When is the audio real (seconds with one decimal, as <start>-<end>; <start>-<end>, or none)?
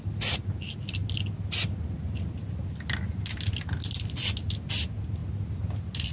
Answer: 0.0-6.1